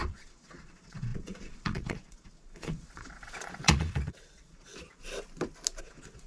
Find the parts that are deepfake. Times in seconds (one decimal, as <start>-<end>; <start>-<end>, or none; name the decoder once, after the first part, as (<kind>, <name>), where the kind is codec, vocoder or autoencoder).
0.0-4.7 (vocoder, Vocos); 5.8-6.3